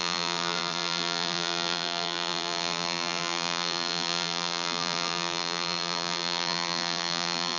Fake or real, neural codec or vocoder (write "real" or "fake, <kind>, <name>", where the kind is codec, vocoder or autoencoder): fake, vocoder, BigVGAN v2